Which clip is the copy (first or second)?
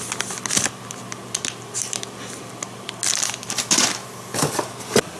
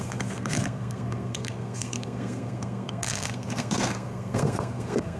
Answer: second